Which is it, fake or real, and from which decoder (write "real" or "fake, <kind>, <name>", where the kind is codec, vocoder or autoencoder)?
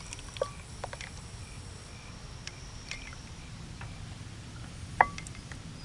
real